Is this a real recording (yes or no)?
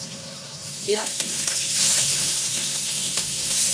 no